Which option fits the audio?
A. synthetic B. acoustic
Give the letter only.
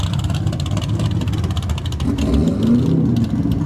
B